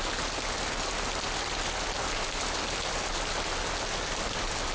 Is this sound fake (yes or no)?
no